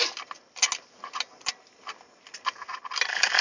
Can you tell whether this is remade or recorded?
recorded